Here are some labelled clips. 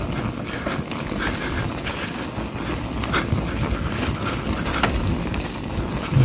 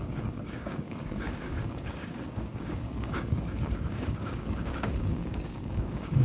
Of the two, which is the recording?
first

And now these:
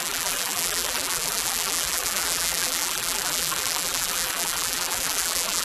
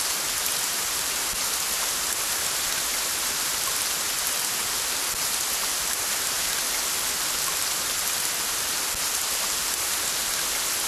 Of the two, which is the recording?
second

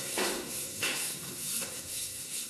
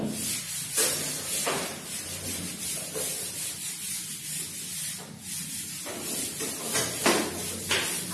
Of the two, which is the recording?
second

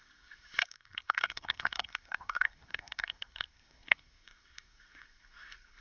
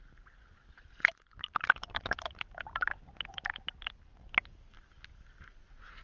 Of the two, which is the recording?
second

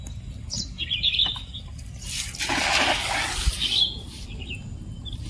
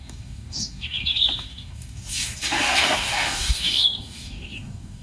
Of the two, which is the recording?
first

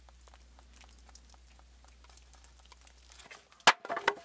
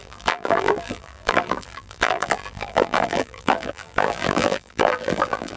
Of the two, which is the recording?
first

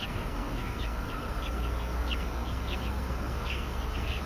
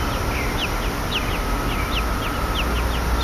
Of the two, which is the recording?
second